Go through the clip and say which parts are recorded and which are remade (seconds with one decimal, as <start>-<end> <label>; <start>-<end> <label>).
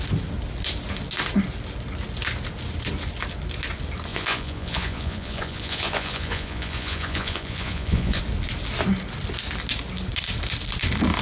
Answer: 0.0-4.1 recorded; 4.1-8.2 remade; 8.2-11.2 recorded